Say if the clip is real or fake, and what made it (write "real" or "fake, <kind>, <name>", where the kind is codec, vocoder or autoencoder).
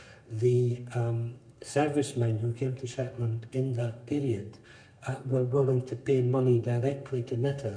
fake, codec, SNAC